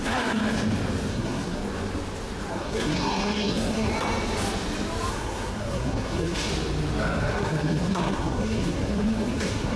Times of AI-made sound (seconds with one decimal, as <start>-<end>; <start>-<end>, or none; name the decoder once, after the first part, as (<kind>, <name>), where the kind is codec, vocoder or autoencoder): 0.0-0.4 (codec, SNAC); 1.1-1.6; 2.5-3.9; 5.1-6.5; 7.2-9.8

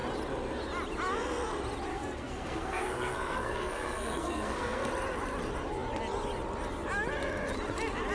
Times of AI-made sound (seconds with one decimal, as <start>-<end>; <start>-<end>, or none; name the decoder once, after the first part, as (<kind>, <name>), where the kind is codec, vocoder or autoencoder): 1.9-4.9 (codec, SNAC)

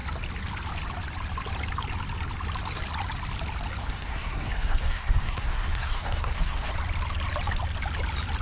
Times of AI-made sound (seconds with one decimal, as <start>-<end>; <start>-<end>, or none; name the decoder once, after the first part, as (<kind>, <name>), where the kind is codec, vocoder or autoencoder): 3.8-6.7 (codec, SNAC)

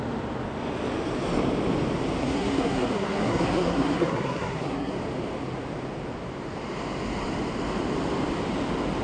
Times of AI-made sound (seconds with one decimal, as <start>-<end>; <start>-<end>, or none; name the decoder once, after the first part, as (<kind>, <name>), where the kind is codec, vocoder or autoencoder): 2.2-4.9 (codec, SNAC)

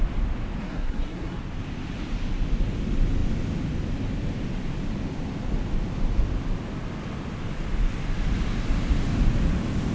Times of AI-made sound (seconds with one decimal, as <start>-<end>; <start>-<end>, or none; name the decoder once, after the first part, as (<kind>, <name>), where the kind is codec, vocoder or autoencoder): 0.6-1.4 (codec, SNAC)